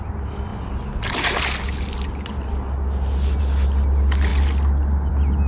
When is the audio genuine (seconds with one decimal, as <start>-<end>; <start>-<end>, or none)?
0.0-5.5